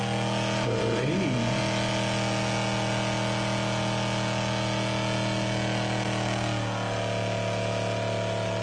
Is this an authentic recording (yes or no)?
yes